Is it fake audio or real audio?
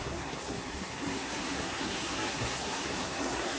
fake